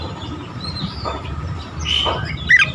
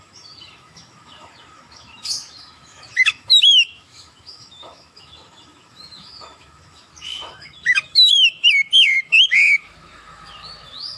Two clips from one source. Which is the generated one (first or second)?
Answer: second